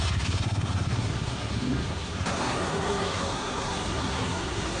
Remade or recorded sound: remade